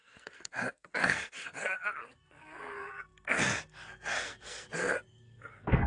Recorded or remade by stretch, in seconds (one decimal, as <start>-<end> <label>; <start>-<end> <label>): 0.0-5.9 remade